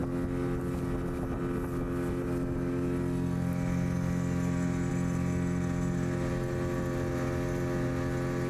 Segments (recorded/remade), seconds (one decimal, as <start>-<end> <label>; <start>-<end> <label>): 0.0-8.5 recorded